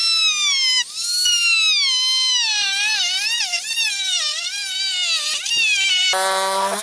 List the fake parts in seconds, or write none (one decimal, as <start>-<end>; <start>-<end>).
2.1-4.8; 5.3-5.9